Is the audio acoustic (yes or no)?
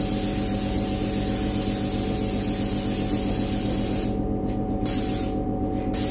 yes